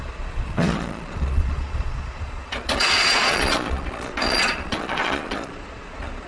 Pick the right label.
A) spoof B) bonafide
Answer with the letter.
A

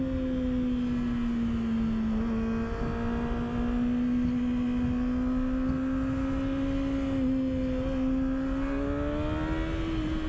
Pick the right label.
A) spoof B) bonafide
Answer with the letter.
B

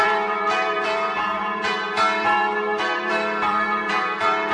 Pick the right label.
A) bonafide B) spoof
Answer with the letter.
B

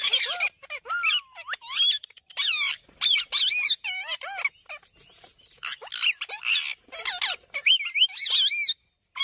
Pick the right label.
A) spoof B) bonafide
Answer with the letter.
B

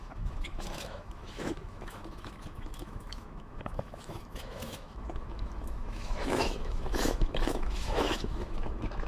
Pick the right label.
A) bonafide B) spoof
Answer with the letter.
B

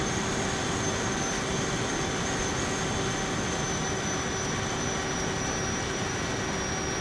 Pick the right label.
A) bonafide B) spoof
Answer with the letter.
A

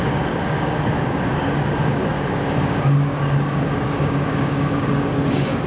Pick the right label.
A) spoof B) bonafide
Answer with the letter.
A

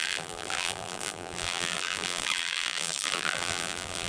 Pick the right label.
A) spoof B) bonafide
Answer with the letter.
A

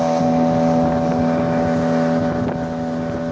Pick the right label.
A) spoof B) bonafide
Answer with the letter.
B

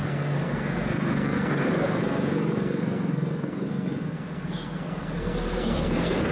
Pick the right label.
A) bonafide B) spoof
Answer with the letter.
B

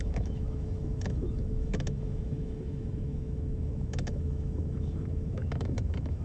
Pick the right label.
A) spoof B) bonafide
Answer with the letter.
A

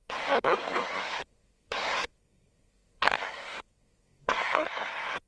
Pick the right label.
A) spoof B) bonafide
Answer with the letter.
A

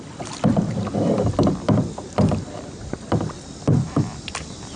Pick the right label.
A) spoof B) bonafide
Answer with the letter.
A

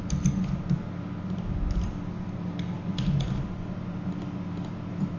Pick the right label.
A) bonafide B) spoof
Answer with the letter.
A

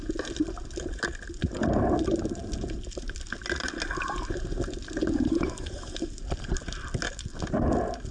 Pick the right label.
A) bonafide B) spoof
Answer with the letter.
A